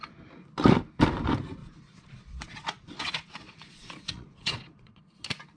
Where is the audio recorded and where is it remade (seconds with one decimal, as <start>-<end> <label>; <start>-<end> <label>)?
0.0-1.6 recorded; 1.6-5.0 remade; 5.0-5.6 recorded